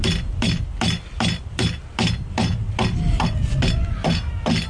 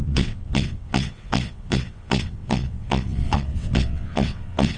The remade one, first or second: second